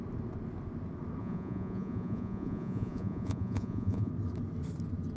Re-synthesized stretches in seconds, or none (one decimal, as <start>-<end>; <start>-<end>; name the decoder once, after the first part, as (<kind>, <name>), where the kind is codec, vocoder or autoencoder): 1.2-4.1 (vocoder, Vocos)